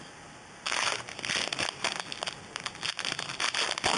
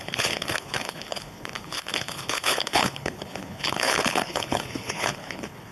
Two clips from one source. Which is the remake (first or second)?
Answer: second